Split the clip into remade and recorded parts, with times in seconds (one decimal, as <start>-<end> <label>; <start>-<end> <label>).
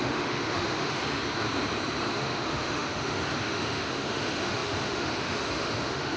0.0-1.0 remade; 1.0-2.0 recorded; 2.0-6.2 remade